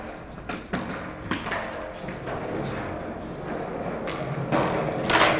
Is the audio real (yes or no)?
yes